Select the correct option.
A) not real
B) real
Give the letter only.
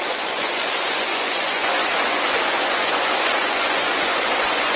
A